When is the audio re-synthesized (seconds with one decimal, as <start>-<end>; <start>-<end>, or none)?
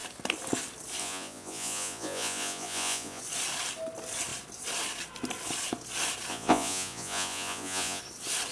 1.0-3.2; 6.3-8.0